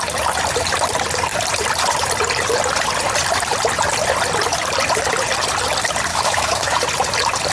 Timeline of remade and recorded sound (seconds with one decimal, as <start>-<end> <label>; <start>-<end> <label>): 0.0-6.1 recorded; 6.1-6.8 remade; 6.8-7.5 recorded